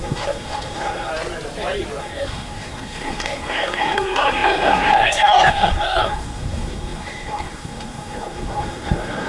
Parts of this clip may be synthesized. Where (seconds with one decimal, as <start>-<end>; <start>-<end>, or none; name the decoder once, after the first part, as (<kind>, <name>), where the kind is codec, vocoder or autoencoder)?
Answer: 0.0-1.1 (codec, SNAC); 2.0-9.3